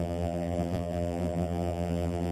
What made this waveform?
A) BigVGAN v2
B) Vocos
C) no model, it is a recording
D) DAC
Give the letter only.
A